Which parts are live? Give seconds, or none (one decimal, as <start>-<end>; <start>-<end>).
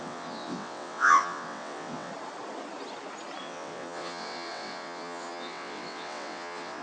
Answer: 2.1-3.4